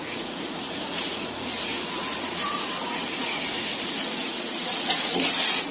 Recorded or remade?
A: remade